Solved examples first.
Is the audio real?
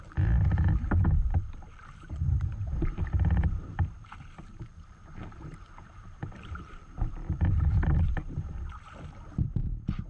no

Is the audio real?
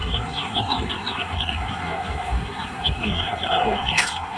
no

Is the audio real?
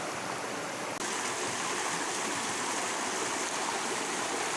yes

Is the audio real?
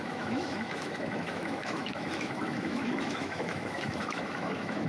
no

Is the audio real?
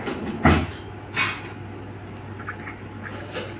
yes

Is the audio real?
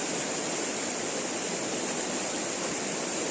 yes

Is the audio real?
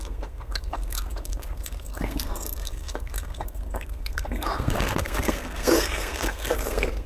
no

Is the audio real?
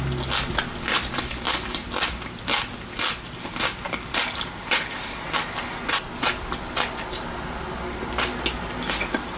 yes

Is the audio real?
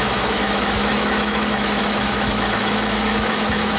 no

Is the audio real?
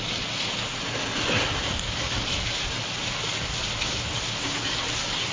yes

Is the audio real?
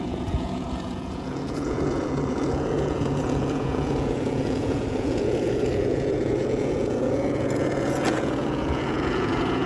no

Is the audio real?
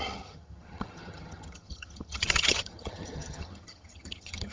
no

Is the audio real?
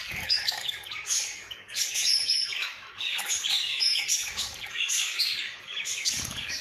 no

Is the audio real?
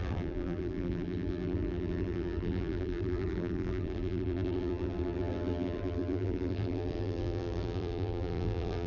no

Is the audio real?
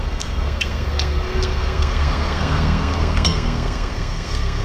no